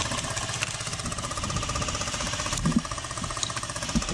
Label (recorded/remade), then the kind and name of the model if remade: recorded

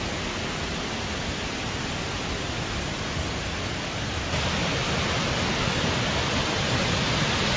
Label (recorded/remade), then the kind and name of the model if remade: recorded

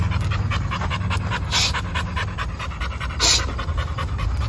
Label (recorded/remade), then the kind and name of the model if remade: recorded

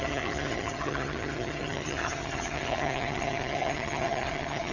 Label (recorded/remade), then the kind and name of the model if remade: remade, vocoder, HiFi-GAN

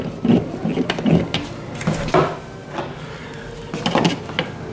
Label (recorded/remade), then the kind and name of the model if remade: recorded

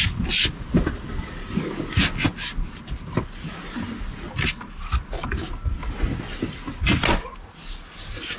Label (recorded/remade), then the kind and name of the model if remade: recorded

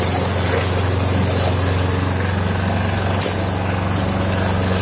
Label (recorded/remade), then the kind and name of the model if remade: recorded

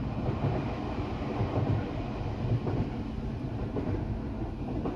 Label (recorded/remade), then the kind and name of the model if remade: recorded